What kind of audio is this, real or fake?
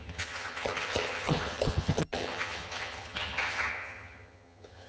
fake